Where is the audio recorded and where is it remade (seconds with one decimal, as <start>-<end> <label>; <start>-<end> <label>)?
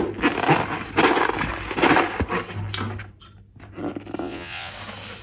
0.0-4.2 recorded; 4.2-4.7 remade; 4.7-5.2 recorded